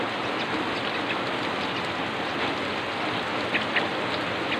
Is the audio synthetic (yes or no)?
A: no